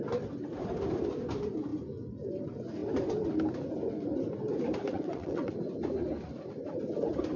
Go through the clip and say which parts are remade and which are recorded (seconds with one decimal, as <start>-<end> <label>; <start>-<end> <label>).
0.0-4.9 recorded; 4.9-5.5 remade; 5.5-7.4 recorded